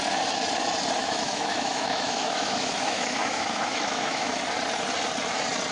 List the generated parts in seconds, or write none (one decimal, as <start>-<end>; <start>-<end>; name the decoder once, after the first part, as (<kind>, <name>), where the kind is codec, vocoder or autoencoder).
1.0-4.4 (autoencoder, DAC-VAE)